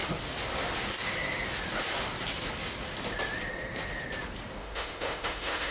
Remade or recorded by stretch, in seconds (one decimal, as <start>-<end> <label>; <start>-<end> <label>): 0.0-4.6 recorded; 4.6-5.7 remade